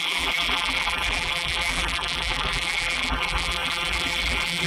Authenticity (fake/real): fake